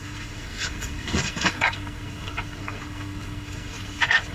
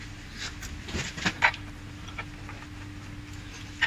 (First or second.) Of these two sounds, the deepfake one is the first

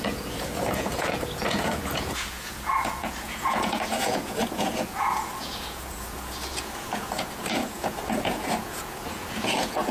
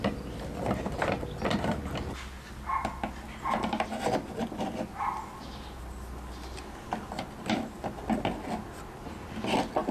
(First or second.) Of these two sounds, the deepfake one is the first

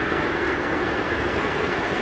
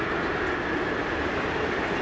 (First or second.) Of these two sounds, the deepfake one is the first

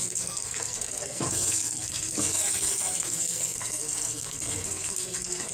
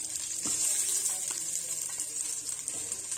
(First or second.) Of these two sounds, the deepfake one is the first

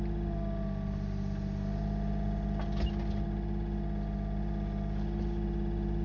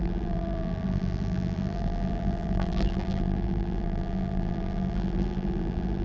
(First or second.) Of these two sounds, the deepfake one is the second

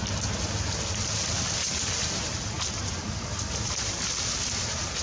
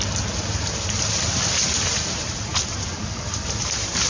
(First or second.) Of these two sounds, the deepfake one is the second